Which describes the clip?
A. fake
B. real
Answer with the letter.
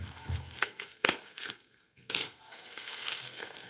A